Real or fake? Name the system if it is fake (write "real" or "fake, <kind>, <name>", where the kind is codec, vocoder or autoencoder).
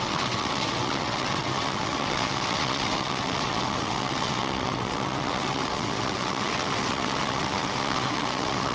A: fake, vocoder, WaveNeXt